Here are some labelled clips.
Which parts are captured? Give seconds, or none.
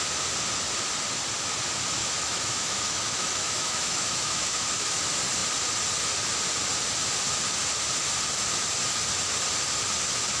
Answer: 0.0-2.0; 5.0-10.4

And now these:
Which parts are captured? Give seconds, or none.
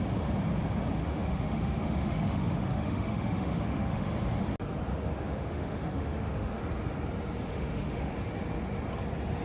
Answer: 0.0-1.0; 4.1-4.9; 6.6-7.5; 8.1-9.4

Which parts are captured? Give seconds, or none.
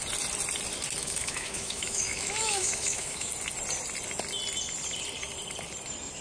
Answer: 0.0-1.0; 3.3-6.2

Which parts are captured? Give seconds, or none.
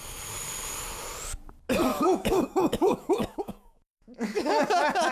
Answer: 0.0-1.9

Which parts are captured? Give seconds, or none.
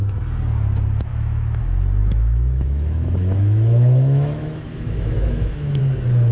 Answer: 0.0-1.1; 1.6-2.0; 5.8-6.3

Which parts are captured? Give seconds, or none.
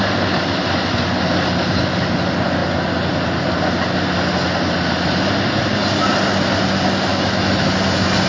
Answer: 0.0-7.1; 7.7-8.3